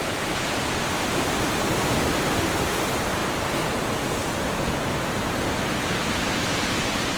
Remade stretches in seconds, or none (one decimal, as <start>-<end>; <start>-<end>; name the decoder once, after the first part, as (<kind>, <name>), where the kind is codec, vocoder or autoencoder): 0.0-0.8 (vocoder, Vocos); 3.2-4.9